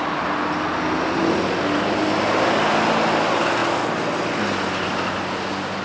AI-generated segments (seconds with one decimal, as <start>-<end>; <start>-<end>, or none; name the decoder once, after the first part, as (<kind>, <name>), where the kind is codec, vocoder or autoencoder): none